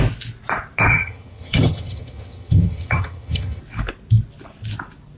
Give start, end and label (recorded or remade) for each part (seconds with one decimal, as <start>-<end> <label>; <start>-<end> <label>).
0.0-0.9 recorded; 0.9-3.6 remade; 3.6-5.2 recorded